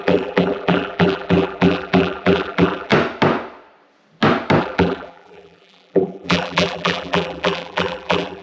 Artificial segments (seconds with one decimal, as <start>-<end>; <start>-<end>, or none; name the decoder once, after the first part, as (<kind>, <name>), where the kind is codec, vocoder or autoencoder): 0.0-2.9 (vocoder, BigVGAN v2); 4.6-8.4